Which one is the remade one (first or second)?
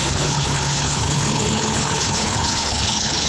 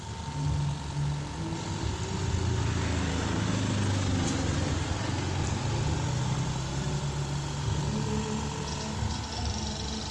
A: first